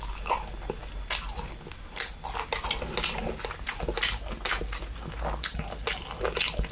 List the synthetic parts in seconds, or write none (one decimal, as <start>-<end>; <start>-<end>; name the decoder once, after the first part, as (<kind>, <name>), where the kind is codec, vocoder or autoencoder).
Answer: none